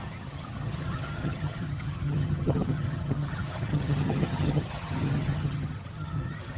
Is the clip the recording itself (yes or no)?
no